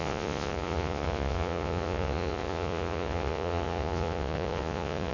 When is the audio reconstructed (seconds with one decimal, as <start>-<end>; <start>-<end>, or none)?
0.0-5.1